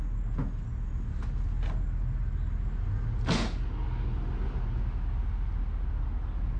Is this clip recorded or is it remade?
recorded